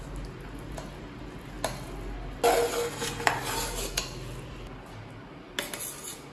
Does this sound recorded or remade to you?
recorded